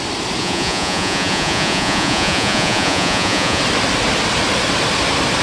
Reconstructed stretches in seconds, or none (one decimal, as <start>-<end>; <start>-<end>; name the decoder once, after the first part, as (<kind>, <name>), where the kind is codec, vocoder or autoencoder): 0.4-3.6 (vocoder, Vocos)